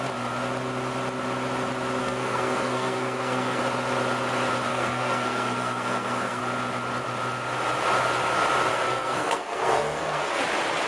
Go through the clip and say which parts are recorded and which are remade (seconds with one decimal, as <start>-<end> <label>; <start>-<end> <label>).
0.0-2.0 recorded; 2.0-3.6 remade; 3.6-4.7 recorded; 4.7-6.4 remade; 6.4-8.7 recorded; 8.7-10.4 remade; 10.4-10.9 recorded